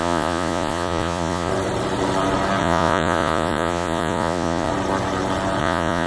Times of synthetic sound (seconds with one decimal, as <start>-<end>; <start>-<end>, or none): 0.0-1.5; 2.6-4.7; 5.6-6.1